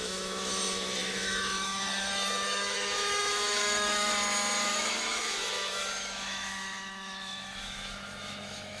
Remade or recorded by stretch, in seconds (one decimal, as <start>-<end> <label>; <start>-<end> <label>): 0.0-4.1 remade; 4.1-4.6 recorded; 4.6-8.8 remade